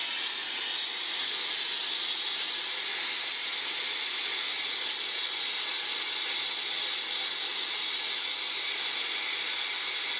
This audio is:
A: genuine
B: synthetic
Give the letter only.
A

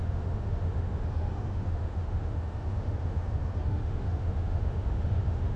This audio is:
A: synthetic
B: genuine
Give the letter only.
A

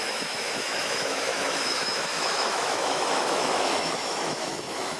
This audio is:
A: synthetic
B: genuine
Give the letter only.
A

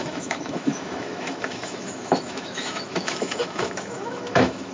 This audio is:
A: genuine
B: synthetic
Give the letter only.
B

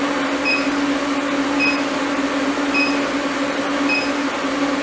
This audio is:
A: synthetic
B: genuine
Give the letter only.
B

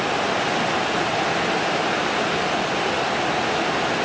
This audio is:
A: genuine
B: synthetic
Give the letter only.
A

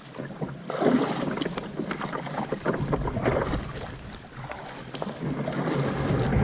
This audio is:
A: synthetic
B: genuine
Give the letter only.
B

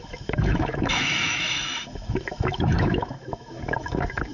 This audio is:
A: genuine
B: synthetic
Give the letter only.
B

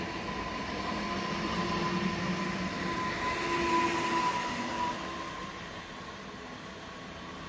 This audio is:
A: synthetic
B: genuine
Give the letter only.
B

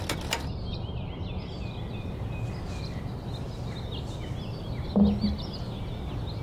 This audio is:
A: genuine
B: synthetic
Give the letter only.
A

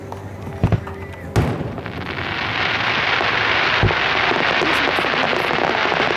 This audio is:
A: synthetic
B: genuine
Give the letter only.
B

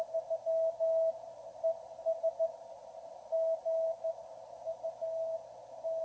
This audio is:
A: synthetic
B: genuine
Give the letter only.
B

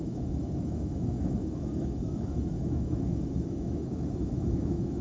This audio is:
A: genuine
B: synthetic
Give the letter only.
B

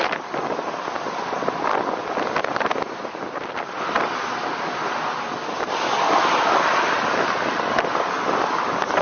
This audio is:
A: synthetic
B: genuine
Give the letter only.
B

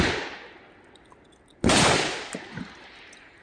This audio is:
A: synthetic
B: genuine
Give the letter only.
B